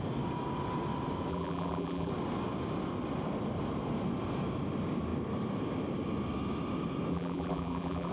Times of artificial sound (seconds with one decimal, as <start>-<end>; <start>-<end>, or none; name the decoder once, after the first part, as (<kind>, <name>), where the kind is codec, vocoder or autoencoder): 1.3-2.1 (vocoder, BigVGAN v2); 7.1-8.1